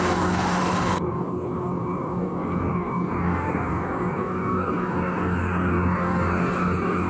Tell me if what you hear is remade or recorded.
remade